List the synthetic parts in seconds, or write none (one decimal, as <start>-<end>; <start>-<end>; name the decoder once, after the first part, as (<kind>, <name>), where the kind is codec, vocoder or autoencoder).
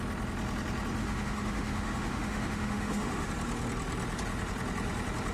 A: 1.0-3.3 (autoencoder, DAC-VAE)